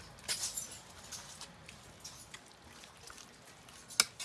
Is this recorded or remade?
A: recorded